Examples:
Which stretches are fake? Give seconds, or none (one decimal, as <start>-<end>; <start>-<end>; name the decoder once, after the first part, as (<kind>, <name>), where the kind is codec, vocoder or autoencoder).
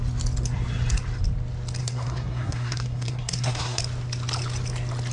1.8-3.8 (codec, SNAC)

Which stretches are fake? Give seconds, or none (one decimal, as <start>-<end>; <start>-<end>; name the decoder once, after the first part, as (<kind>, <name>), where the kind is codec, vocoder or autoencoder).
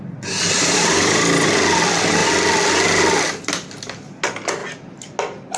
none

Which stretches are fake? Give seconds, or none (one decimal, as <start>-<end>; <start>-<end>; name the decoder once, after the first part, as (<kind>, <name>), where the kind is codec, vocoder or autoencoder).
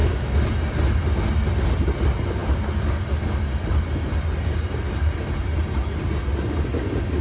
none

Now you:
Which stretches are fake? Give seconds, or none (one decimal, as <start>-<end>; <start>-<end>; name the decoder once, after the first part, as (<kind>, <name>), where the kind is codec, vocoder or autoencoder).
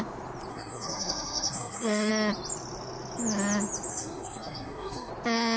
0.5-2.1 (codec, SNAC); 3.9-5.1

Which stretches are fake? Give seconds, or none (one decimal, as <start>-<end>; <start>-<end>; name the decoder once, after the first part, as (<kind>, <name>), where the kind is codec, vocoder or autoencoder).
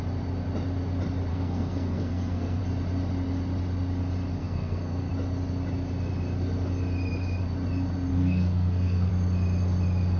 1.3-2.6 (codec, SNAC); 4.4-5.1; 8.1-9.1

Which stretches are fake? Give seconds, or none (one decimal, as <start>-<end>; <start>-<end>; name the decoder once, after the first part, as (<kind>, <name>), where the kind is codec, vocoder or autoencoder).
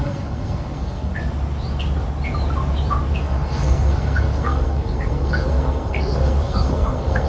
0.0-1.1 (codec, SNAC); 3.2-7.3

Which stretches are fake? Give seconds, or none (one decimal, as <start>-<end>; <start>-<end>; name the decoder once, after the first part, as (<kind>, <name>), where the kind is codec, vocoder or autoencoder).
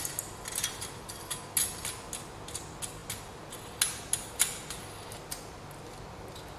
none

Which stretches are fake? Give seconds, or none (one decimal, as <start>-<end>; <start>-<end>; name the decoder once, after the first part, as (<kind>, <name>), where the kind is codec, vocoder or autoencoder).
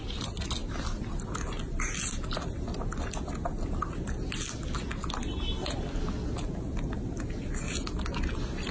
none